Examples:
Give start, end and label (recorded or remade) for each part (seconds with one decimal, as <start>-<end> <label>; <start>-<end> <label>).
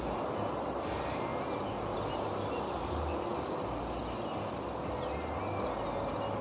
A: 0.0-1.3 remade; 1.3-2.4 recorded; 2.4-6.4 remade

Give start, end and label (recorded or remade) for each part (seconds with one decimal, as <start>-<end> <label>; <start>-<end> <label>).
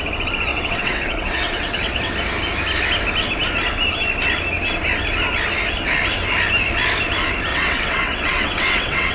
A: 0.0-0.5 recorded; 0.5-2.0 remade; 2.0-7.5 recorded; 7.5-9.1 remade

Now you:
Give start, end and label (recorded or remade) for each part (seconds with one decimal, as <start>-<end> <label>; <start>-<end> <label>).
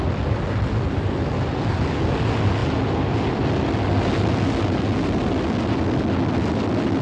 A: 0.0-7.0 recorded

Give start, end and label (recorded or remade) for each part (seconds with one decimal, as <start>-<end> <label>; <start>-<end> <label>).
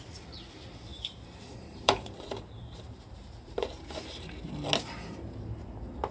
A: 0.0-0.9 recorded; 0.9-4.5 remade; 4.5-6.1 recorded